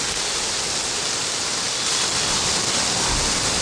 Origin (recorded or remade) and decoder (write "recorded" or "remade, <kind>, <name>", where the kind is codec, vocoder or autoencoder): recorded